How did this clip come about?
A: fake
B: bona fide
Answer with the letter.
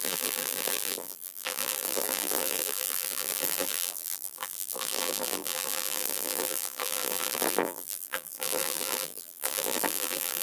A